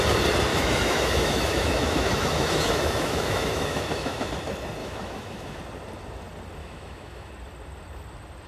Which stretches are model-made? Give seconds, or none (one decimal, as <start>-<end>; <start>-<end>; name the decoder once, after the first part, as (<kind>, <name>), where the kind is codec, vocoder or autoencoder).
0.5-4.3 (autoencoder, DAC-VAE); 4.8-5.6; 6.6-7.3